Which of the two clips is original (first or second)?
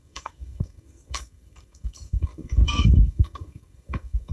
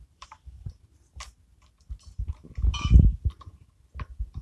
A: second